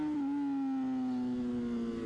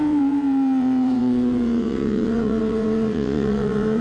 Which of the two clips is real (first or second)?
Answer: first